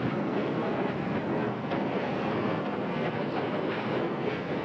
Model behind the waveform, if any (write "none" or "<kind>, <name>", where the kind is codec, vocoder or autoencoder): codec, SNAC